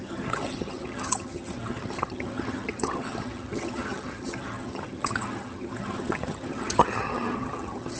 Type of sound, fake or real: fake